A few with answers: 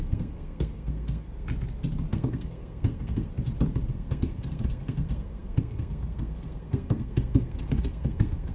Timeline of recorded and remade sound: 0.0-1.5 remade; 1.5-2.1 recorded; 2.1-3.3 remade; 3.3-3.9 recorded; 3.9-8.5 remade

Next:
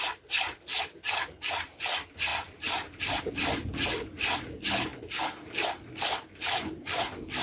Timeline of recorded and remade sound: 0.0-2.3 recorded; 2.3-3.3 remade; 3.3-7.4 recorded

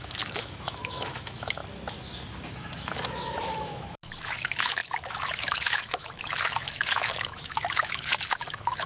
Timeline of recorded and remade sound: 0.0-1.6 remade; 1.6-3.4 recorded; 3.4-8.9 remade

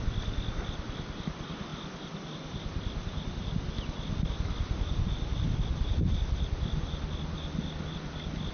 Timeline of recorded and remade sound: 0.0-8.5 recorded

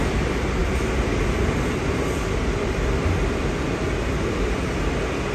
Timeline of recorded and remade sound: 0.0-5.3 recorded

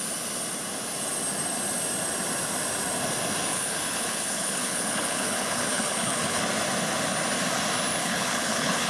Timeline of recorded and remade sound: 0.0-3.5 recorded; 3.5-6.4 remade; 6.4-8.0 recorded; 8.0-8.9 remade

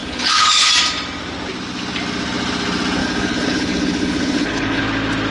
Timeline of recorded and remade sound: 0.0-0.7 remade; 0.7-3.0 recorded; 3.0-4.8 remade; 4.8-5.3 recorded

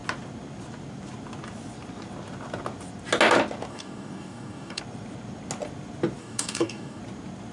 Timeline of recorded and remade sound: 0.0-3.7 recorded; 3.7-4.8 remade; 4.8-6.2 recorded; 6.2-7.0 remade; 7.0-7.5 recorded